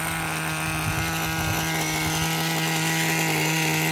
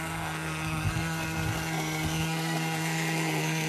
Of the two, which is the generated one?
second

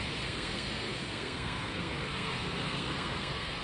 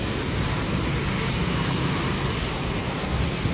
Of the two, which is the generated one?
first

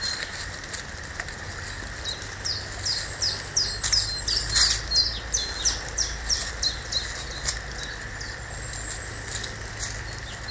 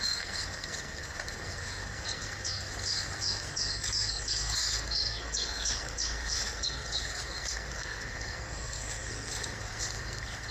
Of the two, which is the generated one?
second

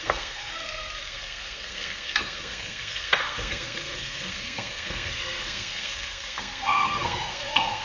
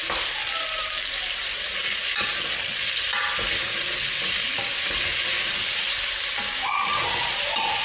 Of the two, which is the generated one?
first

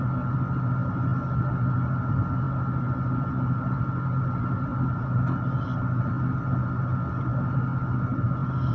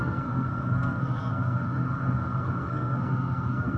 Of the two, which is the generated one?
second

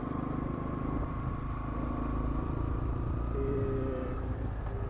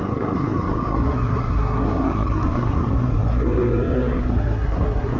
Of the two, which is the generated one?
second